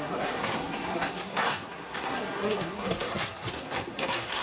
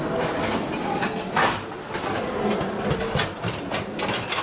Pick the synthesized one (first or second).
first